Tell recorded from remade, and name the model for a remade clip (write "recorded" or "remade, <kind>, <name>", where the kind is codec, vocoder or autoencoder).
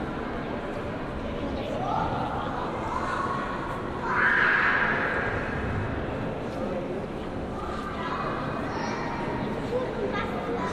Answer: recorded